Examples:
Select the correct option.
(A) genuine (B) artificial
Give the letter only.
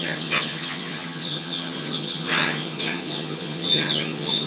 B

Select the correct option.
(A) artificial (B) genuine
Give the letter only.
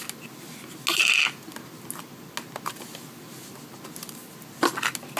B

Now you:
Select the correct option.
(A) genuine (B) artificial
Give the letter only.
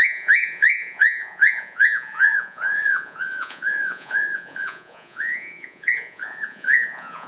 B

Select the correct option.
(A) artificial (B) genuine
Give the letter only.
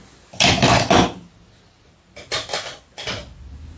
B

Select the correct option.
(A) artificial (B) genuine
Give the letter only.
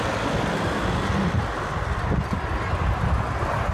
B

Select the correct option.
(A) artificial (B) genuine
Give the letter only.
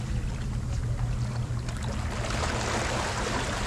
B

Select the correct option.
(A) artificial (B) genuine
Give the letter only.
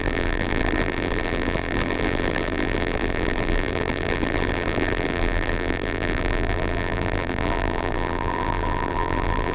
A